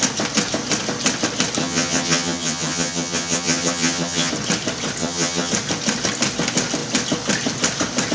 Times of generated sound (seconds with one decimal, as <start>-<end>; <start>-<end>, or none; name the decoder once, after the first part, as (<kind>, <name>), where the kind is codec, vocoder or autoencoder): 1.6-4.3 (vocoder, HiFi-GAN); 5.0-5.5